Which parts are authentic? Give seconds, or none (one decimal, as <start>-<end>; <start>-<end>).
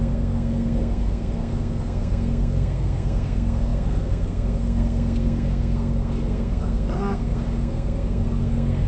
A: none